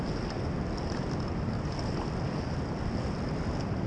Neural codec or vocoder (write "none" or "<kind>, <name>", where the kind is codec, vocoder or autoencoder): none